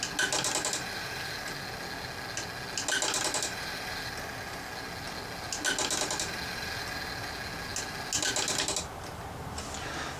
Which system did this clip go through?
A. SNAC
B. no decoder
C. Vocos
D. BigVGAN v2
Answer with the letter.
B